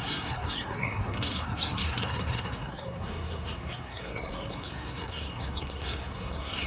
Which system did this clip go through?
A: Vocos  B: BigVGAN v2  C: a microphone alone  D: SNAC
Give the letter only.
D